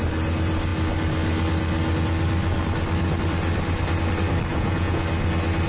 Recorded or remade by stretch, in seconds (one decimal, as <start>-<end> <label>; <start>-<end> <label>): 0.0-4.5 recorded; 4.5-5.0 remade; 5.0-5.7 recorded